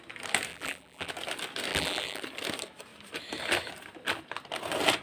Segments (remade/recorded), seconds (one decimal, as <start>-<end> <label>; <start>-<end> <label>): 0.0-0.5 recorded; 0.5-1.1 remade; 1.1-1.7 recorded; 1.7-2.2 remade; 2.2-5.0 recorded

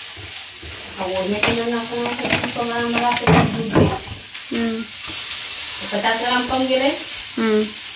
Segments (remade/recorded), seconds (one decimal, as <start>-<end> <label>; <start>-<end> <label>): 0.0-8.0 recorded

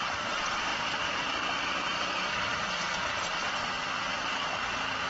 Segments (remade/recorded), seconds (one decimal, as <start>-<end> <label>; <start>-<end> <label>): 0.0-5.1 recorded

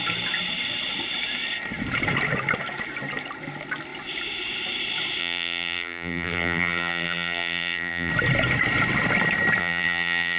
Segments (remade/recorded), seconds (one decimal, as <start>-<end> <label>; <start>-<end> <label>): 0.0-5.2 recorded; 5.2-8.1 remade; 8.1-9.6 recorded; 9.6-10.4 remade

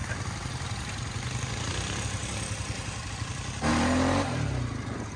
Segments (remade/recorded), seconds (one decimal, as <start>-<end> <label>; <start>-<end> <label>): 0.0-3.7 recorded; 3.7-5.2 remade

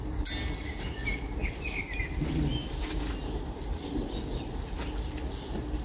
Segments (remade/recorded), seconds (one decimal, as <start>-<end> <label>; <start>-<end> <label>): 0.0-1.4 recorded; 1.4-3.0 remade; 3.0-5.8 recorded

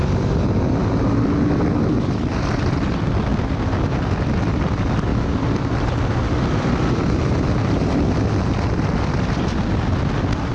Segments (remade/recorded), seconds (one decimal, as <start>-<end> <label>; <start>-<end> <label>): 0.0-5.1 recorded; 5.1-8.0 remade; 8.0-10.5 recorded

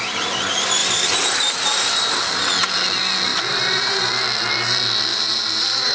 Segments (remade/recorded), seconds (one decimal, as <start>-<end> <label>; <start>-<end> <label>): 0.0-0.8 recorded; 0.8-2.2 remade; 2.2-3.3 recorded; 3.3-4.1 remade; 4.1-5.1 recorded; 5.1-5.9 remade